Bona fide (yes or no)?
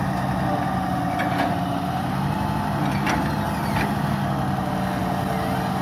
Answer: yes